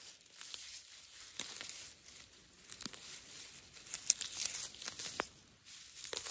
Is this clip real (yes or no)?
yes